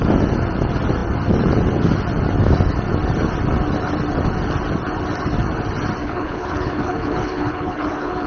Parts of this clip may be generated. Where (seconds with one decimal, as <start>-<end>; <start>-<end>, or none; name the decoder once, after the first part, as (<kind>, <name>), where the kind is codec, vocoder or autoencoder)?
6.0-8.3 (codec, HILCodec)